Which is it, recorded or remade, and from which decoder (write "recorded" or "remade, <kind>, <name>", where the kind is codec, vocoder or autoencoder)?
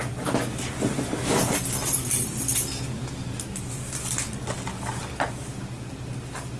recorded